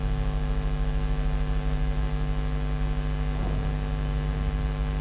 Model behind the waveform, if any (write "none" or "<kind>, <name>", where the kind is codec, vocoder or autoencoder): none